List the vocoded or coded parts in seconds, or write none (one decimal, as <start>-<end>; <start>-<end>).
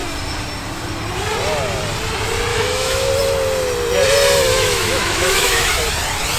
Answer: 2.5-3.1; 4.5-5.8